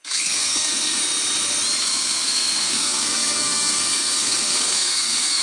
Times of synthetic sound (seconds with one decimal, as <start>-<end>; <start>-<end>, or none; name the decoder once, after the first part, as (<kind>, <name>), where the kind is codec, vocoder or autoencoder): 0.0-1.0 (codec, SNAC); 1.8-5.4